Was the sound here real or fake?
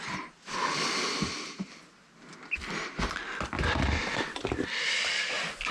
real